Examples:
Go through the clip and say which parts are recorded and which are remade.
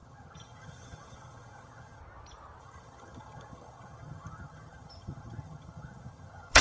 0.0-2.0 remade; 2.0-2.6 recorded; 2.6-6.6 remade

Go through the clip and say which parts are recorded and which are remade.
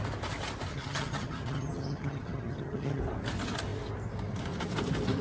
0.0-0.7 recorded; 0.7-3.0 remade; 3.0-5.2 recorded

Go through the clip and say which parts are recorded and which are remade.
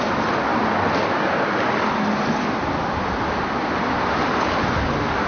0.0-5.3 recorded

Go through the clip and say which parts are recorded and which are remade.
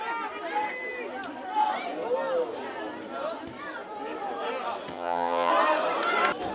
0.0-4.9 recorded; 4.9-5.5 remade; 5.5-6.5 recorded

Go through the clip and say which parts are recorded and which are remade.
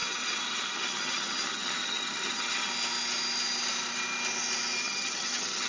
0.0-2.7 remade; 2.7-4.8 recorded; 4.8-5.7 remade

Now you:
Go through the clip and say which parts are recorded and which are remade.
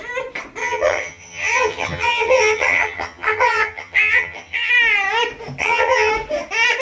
0.0-0.6 recorded; 0.6-4.7 remade; 4.7-5.6 recorded; 5.6-6.1 remade; 6.1-6.8 recorded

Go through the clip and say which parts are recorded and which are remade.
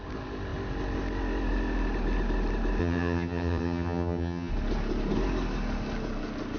0.0-2.8 recorded; 2.8-4.5 remade; 4.5-6.6 recorded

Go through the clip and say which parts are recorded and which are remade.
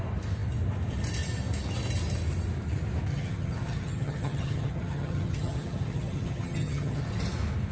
0.0-3.1 recorded; 3.1-7.1 remade; 7.1-7.7 recorded